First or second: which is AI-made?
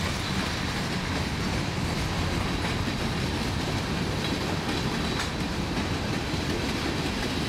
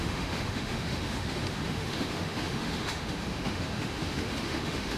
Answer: second